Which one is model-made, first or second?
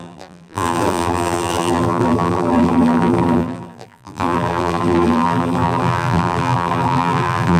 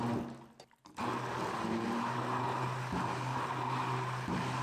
first